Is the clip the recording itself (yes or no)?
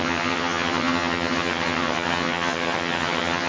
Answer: no